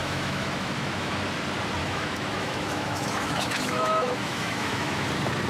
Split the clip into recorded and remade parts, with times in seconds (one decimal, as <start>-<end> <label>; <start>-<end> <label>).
0.0-1.1 remade; 1.1-1.8 recorded; 1.8-5.1 remade; 5.1-5.5 recorded